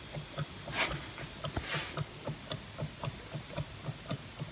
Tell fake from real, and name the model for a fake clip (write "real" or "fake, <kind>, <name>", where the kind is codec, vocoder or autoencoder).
real